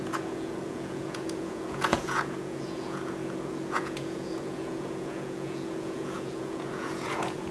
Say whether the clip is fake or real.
fake